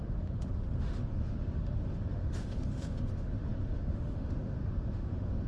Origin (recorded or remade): remade